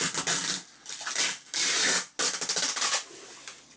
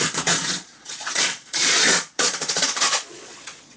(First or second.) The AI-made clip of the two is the second